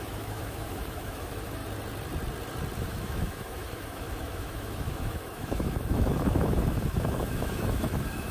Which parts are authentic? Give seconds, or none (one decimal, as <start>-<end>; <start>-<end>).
1.6-2.8

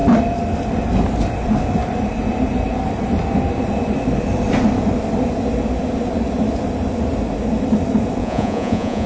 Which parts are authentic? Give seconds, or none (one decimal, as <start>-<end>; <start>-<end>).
0.0-8.2

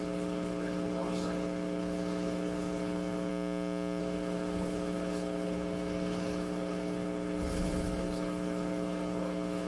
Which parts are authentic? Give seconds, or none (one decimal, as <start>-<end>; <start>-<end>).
3.3-4.0

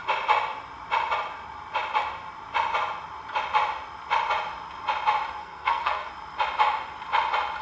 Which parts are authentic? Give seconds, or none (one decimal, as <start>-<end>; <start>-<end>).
0.0-5.4; 6.1-7.6

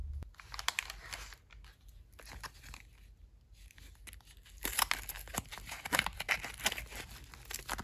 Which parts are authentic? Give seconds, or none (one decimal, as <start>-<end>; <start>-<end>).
0.0-7.8

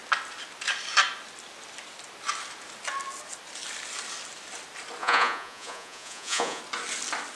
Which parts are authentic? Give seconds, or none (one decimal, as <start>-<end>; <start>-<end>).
0.0-5.0; 6.6-7.4

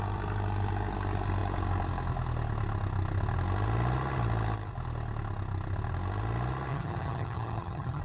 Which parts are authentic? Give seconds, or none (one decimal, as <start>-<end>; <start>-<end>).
0.0-6.7